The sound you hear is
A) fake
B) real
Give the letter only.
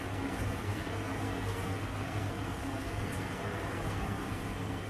A